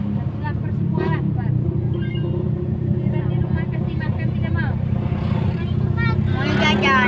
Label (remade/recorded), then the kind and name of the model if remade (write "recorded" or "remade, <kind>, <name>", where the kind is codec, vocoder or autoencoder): recorded